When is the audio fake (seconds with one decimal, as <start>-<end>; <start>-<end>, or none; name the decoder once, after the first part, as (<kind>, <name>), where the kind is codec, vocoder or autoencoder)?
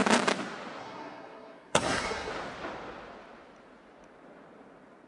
0.8-2.3 (codec, SNAC)